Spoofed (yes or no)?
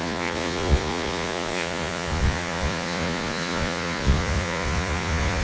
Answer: yes